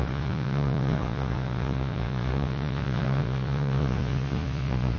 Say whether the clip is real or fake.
fake